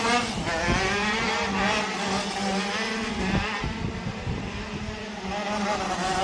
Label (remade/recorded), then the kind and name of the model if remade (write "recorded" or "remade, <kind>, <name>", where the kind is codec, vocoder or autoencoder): recorded